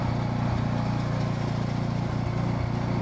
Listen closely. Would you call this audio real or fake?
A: real